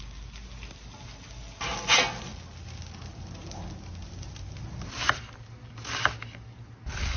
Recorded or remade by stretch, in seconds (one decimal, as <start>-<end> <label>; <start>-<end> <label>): 0.0-7.2 recorded